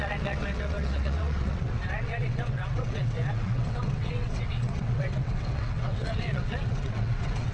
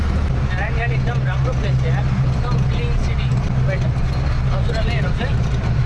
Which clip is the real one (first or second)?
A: second